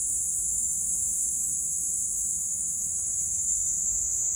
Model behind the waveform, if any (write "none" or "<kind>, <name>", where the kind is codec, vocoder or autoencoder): autoencoder, DAC-VAE